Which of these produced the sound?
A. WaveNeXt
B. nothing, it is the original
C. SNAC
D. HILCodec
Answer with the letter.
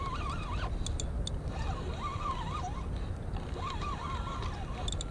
B